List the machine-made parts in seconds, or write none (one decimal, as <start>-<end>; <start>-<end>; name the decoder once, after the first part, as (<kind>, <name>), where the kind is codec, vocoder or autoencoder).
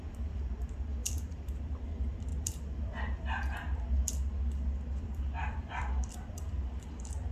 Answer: 0.0-7.3 (vocoder, BigVGAN v2)